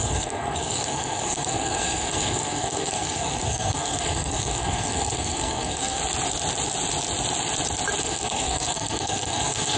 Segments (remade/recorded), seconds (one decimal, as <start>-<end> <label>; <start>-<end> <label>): 0.0-6.0 remade; 6.0-8.0 recorded; 8.0-9.8 remade